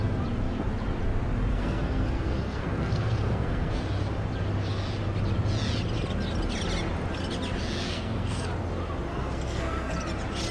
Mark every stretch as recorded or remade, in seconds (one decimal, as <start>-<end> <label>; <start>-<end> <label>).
0.0-1.5 recorded; 1.5-3.8 remade; 3.8-7.8 recorded; 7.8-8.5 remade; 8.5-9.1 recorded; 9.1-9.9 remade; 9.9-10.5 recorded